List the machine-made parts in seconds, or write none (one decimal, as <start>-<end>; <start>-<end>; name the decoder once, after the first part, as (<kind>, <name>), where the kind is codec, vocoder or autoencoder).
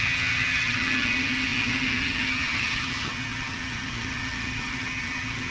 0.0-5.5 (vocoder, HiFi-GAN)